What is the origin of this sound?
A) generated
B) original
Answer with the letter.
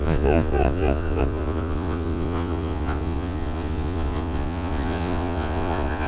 A